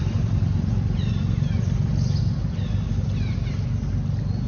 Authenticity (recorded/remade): recorded